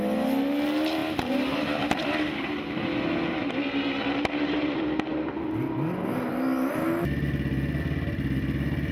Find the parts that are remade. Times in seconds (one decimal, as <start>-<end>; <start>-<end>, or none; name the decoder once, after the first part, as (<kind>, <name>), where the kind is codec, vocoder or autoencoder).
none